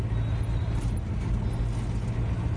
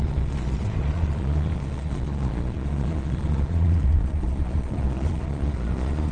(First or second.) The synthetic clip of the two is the second